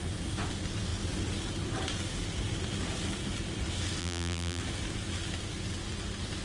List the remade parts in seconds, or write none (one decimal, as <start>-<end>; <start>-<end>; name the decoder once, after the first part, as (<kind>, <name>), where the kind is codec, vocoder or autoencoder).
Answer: 4.0-4.6 (vocoder, BigVGAN v2)